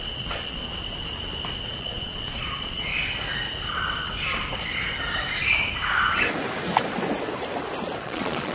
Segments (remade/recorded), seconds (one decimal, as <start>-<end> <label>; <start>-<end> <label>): 0.0-0.6 remade; 0.6-1.8 recorded; 1.8-2.9 remade; 2.9-8.0 recorded; 8.0-8.5 remade